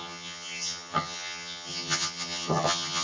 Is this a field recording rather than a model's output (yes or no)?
no